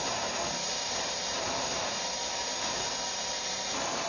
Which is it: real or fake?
fake